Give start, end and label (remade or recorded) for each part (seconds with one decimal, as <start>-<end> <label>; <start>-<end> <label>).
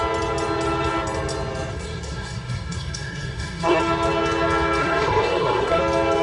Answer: 0.0-1.7 recorded; 1.7-3.8 remade; 3.8-4.8 recorded; 4.8-5.8 remade; 5.8-6.2 recorded